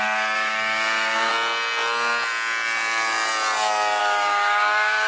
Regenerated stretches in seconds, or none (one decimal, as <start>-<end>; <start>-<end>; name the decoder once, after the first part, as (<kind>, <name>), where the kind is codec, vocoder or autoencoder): 0.0-1.3 (codec, DAC); 4.0-5.1